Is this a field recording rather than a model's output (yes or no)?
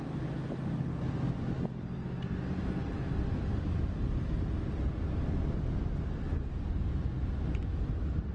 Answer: yes